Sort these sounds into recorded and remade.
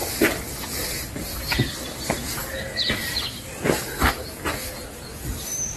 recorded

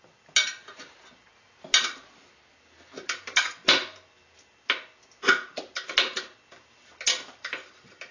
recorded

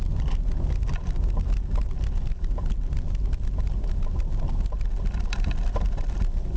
recorded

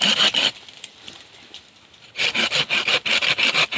recorded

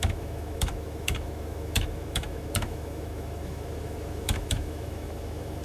remade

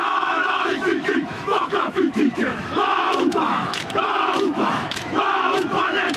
remade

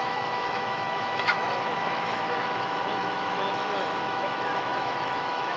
remade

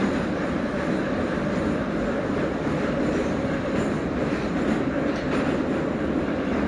recorded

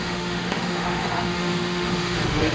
remade